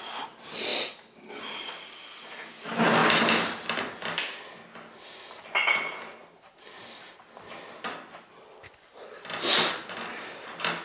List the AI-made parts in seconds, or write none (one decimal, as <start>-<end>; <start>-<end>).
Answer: none